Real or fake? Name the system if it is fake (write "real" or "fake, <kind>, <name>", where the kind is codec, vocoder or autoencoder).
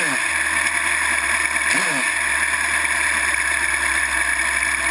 real